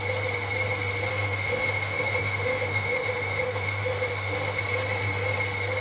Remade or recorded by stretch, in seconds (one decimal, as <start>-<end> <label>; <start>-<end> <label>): 0.0-1.1 recorded; 1.1-4.6 remade; 4.6-5.8 recorded